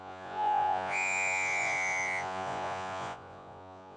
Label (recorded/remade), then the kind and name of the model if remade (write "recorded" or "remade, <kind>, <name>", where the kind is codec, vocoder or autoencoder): remade, vocoder, Vocos